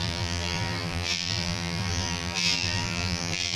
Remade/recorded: remade